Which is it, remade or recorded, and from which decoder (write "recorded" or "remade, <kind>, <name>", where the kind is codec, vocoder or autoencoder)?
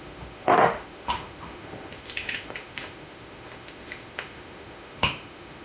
remade, autoencoder, DAC-VAE